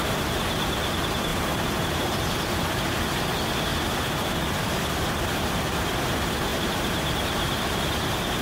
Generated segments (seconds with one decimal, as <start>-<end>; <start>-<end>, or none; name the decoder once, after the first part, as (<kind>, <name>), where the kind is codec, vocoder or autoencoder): 1.3-2.0 (vocoder, BigVGAN v2); 6.5-7.9